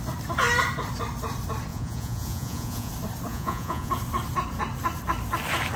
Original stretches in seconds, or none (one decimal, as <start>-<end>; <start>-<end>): 0.0-1.7; 2.9-3.3; 3.9-5.8